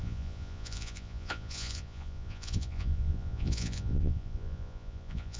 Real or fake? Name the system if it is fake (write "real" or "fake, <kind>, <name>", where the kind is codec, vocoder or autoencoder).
fake, vocoder, Vocos